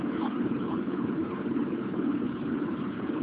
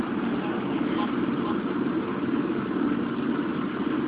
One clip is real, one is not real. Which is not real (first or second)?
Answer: first